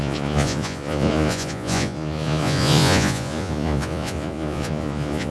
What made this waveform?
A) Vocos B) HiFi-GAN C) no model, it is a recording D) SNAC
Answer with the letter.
A